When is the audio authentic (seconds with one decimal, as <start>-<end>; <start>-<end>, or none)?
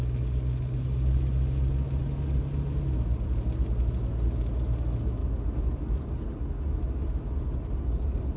0.0-8.4